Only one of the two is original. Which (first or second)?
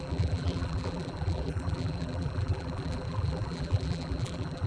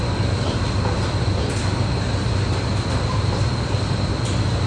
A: second